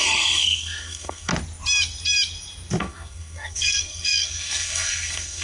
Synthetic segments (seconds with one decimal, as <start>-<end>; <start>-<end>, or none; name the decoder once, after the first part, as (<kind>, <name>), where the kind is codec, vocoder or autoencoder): 0.0-1.3 (codec, SNAC); 2.8-5.4